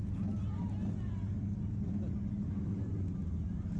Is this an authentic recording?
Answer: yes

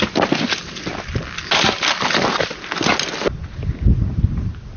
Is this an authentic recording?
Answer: yes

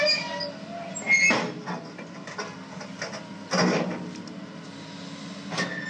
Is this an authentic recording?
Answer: yes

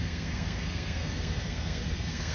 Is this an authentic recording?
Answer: no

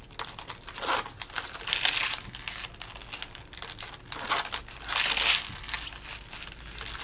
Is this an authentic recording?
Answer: yes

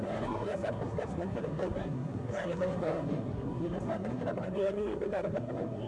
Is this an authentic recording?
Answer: no